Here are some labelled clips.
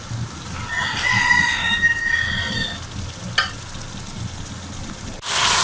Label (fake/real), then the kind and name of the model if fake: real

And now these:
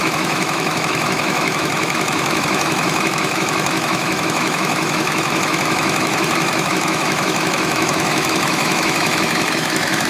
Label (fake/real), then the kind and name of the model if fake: fake, autoencoder, DAC-VAE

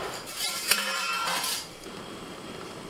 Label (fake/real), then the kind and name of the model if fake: fake, vocoder, BigVGAN v2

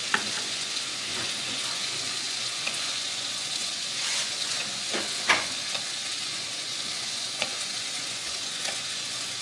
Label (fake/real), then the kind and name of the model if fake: fake, vocoder, Vocos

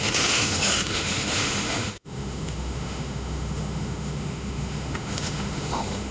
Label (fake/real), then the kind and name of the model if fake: fake, autoencoder, DAC-VAE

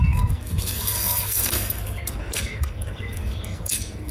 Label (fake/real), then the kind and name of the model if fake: fake, codec, SNAC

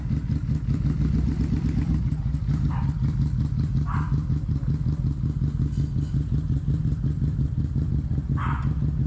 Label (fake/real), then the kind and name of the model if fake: real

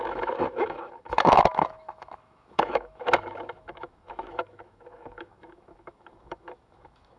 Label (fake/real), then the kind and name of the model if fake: fake, autoencoder, DAC-VAE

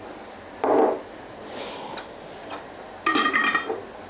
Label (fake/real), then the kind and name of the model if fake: real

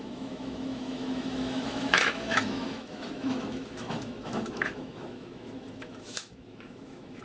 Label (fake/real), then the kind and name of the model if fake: fake, autoencoder, DAC-VAE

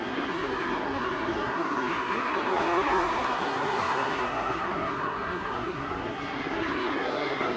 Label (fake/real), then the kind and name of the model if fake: fake, codec, SNAC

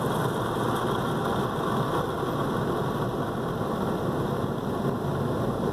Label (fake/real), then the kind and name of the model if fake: real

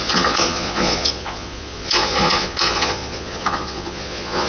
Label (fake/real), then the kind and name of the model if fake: fake, vocoder, Vocos